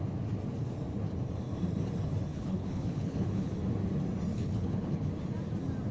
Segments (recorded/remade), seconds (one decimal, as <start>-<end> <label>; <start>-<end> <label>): 0.0-2.3 recorded; 2.3-3.5 remade; 3.5-4.3 recorded; 4.3-5.1 remade; 5.1-5.9 recorded